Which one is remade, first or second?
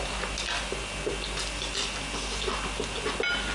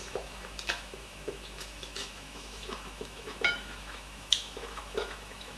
second